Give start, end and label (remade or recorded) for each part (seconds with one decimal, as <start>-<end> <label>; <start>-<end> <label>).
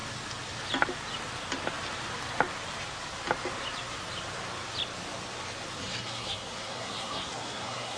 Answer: 0.0-5.8 recorded; 5.8-8.0 remade